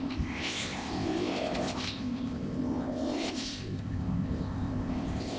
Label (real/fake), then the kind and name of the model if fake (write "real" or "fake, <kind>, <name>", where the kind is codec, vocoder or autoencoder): fake, codec, ZipCodec